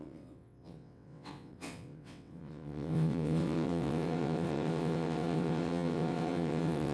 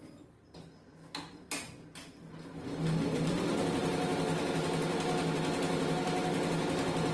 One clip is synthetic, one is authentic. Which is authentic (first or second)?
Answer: second